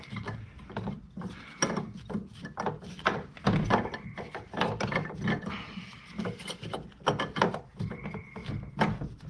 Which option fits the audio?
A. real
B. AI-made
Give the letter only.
A